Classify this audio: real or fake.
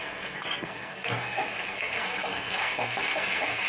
fake